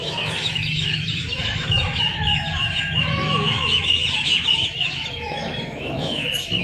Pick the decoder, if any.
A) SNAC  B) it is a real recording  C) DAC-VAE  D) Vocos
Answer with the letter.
C